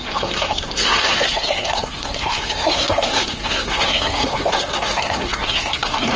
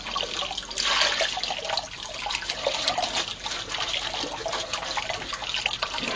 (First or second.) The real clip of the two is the second